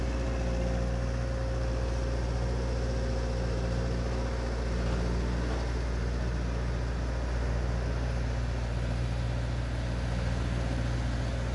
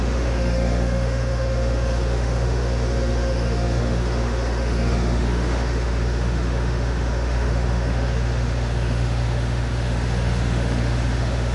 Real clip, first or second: first